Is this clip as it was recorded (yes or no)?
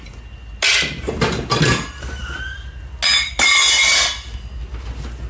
yes